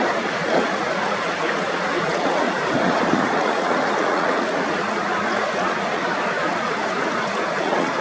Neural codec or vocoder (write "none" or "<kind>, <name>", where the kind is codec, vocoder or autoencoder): vocoder, Vocos